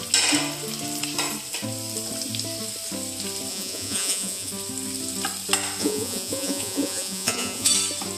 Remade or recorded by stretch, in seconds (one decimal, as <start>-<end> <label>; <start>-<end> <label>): 0.0-3.5 recorded; 3.5-4.5 remade; 4.5-5.8 recorded; 5.8-7.7 remade; 7.7-8.2 recorded